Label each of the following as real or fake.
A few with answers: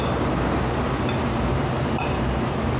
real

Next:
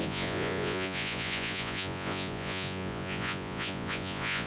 fake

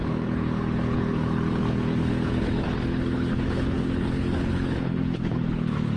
fake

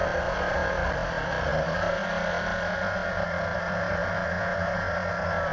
real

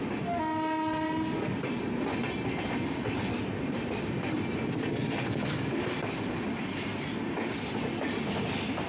real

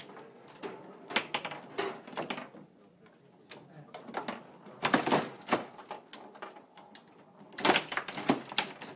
real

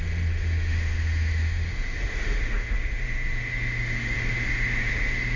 fake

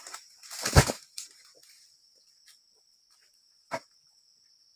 real